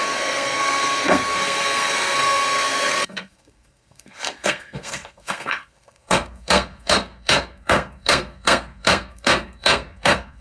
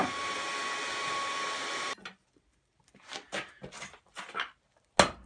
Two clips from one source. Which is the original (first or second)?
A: second